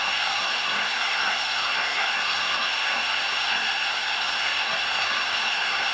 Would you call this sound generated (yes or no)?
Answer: yes